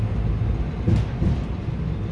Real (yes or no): yes